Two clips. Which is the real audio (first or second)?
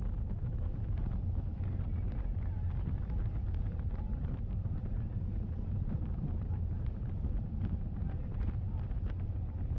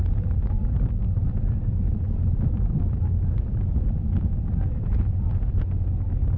second